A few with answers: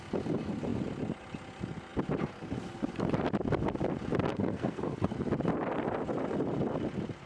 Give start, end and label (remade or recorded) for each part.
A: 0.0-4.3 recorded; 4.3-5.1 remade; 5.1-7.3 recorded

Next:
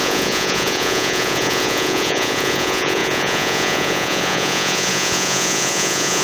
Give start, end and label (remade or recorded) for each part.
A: 0.0-6.2 remade

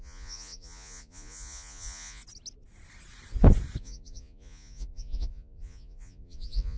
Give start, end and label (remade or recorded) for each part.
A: 0.0-2.2 remade; 2.2-3.8 recorded; 3.8-6.8 remade